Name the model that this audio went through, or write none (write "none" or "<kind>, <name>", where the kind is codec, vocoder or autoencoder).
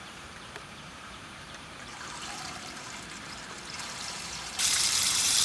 vocoder, BigVGAN v2